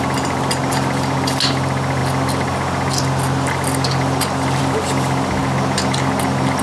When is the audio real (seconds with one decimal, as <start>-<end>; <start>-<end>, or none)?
0.0-6.6